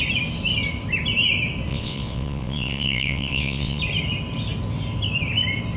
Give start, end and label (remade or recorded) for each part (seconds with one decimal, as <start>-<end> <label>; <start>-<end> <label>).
0.0-1.7 recorded; 1.7-3.8 remade; 3.8-5.8 recorded